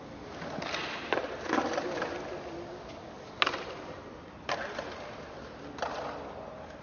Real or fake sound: real